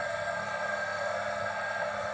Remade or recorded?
remade